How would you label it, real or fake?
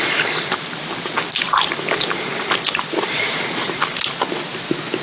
real